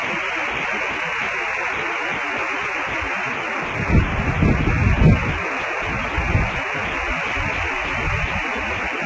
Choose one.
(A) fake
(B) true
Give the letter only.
B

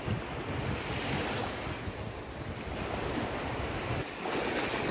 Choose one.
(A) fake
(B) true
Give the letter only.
B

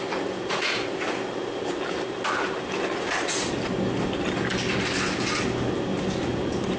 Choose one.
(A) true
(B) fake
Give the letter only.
A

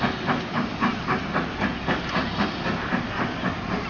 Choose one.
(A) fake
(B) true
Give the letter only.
B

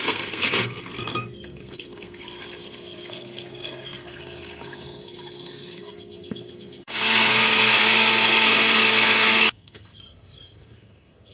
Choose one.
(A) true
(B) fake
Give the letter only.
B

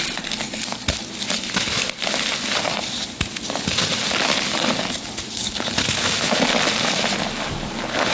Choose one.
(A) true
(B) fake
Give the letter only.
A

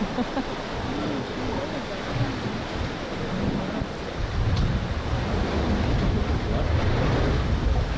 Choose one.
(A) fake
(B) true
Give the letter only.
B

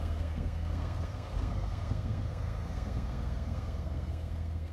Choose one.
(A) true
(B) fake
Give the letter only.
B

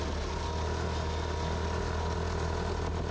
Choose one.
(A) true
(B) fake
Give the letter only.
A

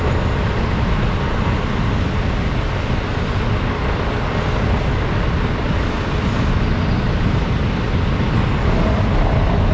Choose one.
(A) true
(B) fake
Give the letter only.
A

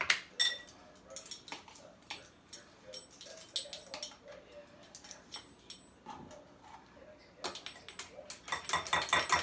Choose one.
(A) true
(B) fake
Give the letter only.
A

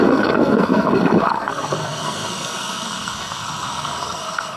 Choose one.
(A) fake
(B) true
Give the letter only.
A